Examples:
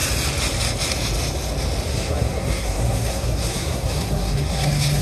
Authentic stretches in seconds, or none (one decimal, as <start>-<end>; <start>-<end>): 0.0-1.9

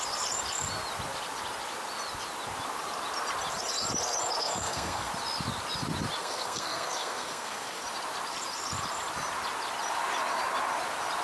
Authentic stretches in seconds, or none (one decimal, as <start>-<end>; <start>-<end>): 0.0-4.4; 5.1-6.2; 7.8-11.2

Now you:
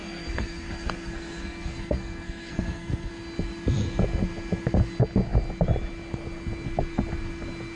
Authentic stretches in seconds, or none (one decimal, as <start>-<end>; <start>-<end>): 3.1-7.8

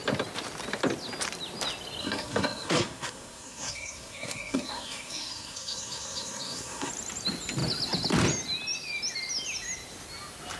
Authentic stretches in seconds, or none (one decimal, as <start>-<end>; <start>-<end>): 0.0-2.0; 6.9-10.6

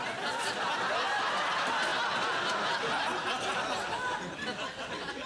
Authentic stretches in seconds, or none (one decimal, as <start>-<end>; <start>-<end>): 0.0-5.3